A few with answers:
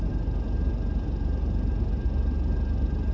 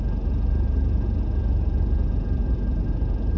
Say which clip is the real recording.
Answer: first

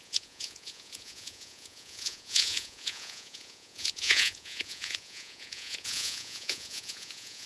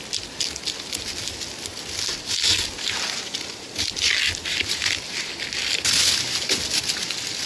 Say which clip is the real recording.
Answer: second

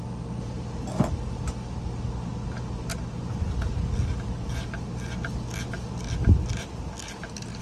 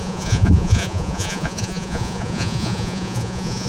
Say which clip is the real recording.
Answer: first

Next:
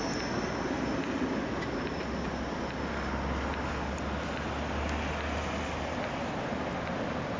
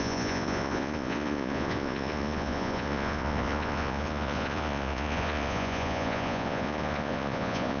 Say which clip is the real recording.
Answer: first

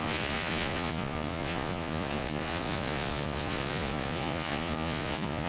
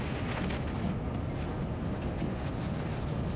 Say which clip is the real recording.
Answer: second